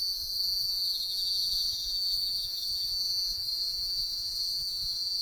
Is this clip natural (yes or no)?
no